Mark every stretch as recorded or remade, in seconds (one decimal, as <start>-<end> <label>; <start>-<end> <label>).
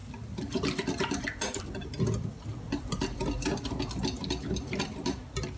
0.0-1.6 remade; 1.6-2.5 recorded; 2.5-5.6 remade